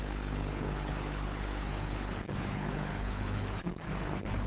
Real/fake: fake